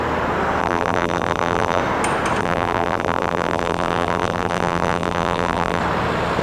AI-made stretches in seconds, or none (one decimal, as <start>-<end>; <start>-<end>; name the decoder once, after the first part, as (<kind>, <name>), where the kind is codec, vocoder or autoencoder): 0.6-1.8 (vocoder, BigVGAN v2); 2.4-5.8